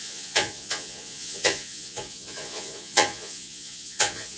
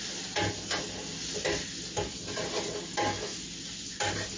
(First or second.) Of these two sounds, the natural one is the second